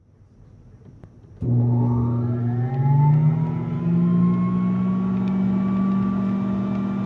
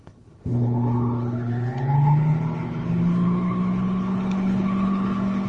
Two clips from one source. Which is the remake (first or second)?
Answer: second